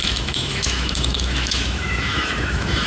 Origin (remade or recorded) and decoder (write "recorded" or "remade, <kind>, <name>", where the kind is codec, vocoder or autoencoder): remade, autoencoder, DAC-VAE